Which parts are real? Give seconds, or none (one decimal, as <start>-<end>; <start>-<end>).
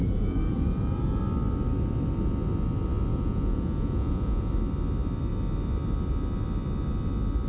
1.2-3.1; 4.5-7.5